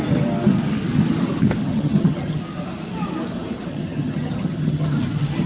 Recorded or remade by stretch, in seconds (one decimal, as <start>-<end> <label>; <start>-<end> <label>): 0.0-1.6 recorded; 1.6-2.4 remade; 2.4-3.7 recorded; 3.7-5.0 remade; 5.0-5.5 recorded